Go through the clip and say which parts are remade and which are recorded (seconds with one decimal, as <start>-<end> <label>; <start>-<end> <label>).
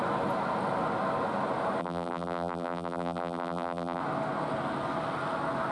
0.0-1.8 recorded; 1.8-4.0 remade; 4.0-5.7 recorded